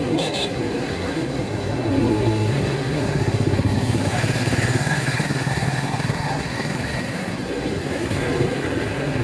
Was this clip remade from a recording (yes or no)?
yes